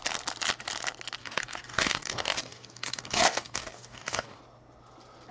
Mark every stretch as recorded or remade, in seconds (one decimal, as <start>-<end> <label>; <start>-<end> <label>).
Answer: 0.0-1.2 recorded; 1.2-4.4 remade; 4.4-5.3 recorded